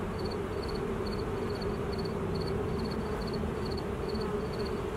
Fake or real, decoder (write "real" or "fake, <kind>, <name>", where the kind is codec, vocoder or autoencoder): real